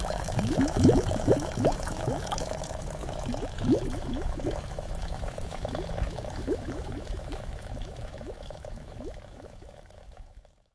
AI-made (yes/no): yes